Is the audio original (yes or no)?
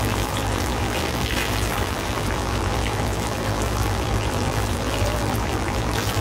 no